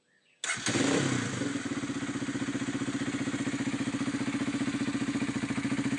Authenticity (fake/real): real